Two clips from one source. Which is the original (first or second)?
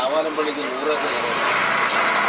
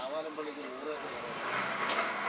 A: first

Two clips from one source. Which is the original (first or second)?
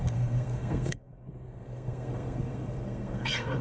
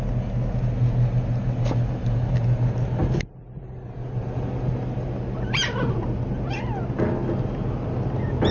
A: second